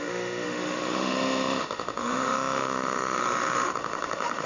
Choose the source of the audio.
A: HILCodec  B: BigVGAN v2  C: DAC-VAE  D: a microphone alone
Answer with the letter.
C